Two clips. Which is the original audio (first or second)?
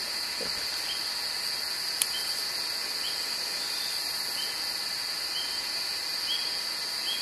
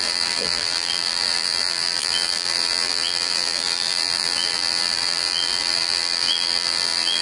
first